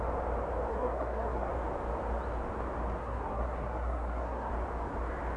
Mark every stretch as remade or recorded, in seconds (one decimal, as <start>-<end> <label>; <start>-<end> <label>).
0.0-0.7 recorded; 0.7-1.5 remade; 1.5-3.0 recorded; 3.0-4.5 remade; 4.5-5.4 recorded